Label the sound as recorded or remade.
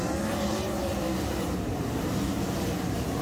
remade